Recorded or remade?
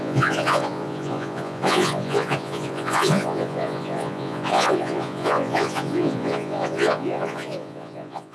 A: remade